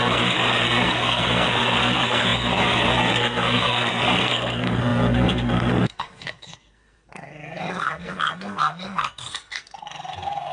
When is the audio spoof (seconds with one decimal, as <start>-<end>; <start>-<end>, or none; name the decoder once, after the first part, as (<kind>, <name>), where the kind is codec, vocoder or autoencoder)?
0.0-10.5 (codec, SNAC)